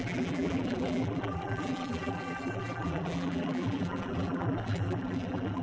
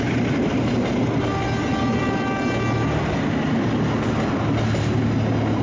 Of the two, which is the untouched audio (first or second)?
second